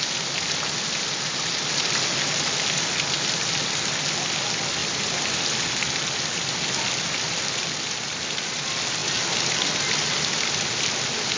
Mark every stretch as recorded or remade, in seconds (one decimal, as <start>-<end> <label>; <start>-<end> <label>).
0.0-11.4 recorded